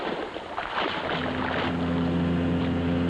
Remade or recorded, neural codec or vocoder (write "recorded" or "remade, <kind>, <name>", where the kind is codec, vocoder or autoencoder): recorded